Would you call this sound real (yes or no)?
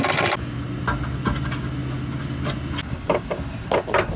yes